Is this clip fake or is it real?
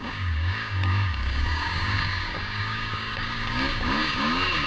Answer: fake